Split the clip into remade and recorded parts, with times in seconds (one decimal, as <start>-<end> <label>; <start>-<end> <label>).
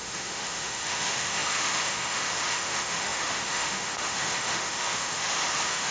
0.0-5.9 remade